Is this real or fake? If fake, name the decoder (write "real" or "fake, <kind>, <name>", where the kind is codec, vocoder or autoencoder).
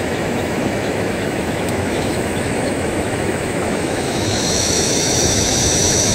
fake, autoencoder, DAC-VAE